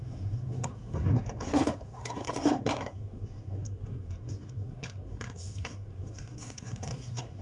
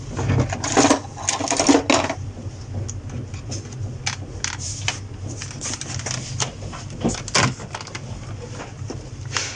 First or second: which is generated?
first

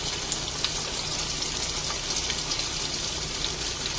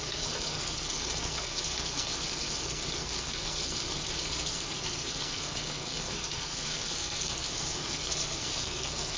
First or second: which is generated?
second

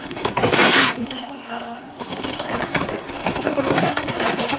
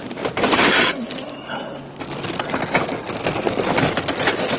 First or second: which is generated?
first